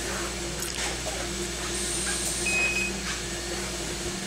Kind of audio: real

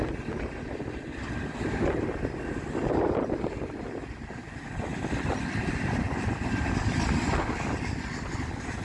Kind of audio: real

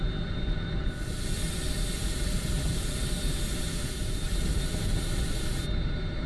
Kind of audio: real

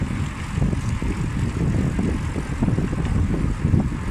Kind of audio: real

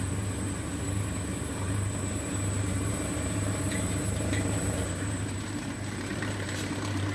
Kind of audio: fake